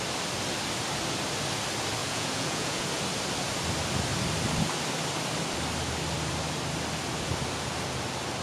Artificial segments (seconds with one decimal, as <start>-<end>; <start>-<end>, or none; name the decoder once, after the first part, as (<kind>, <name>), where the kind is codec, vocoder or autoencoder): 2.0-2.8 (vocoder, Vocos)